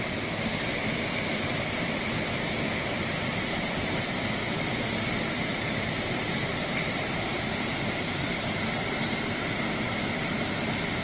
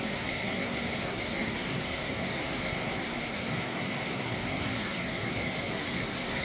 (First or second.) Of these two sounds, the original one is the first